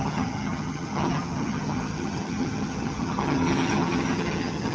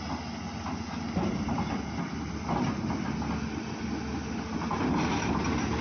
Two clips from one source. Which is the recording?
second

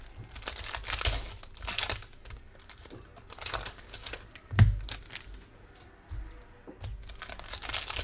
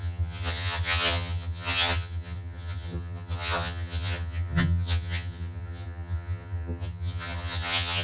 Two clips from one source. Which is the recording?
first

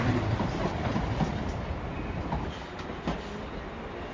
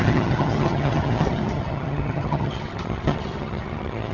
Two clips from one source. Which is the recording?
first